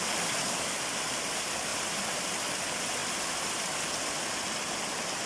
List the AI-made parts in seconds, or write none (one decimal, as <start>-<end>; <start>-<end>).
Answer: none